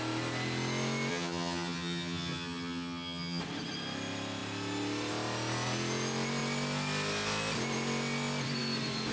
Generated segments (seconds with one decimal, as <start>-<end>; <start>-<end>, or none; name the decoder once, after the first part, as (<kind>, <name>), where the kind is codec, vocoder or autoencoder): 1.1-3.4 (vocoder, HiFi-GAN)